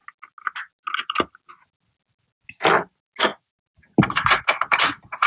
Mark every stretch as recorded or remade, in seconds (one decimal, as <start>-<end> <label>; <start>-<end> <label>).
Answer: 0.0-5.3 recorded